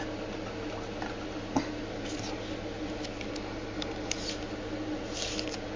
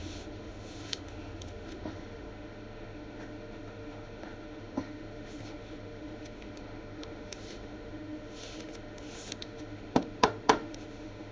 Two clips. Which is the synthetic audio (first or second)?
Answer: second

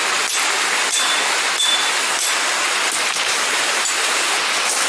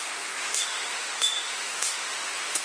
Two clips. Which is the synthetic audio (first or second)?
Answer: second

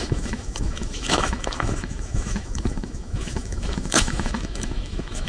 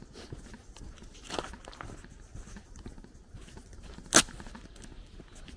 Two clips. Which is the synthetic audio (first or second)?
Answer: first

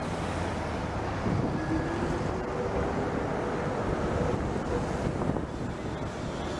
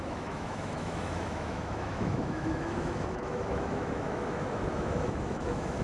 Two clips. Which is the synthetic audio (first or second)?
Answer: second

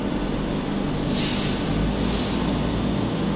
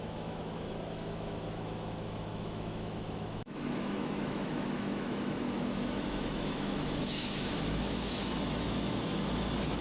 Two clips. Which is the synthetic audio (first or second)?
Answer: second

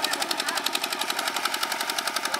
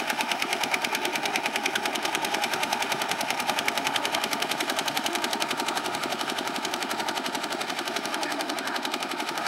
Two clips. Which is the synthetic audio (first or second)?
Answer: second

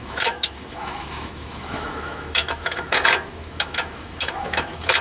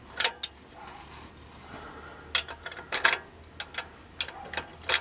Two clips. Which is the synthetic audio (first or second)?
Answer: first